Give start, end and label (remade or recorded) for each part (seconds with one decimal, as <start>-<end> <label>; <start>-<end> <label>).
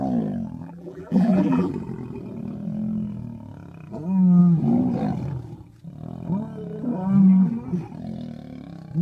0.0-0.6 recorded; 0.6-1.7 remade; 1.7-9.0 recorded